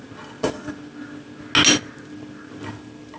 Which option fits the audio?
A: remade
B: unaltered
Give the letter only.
B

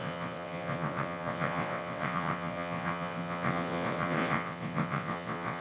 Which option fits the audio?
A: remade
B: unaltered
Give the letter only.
A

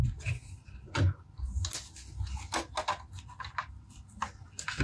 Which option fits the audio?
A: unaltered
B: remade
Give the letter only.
A